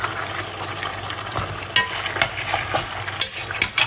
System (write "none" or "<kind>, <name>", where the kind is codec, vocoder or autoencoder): none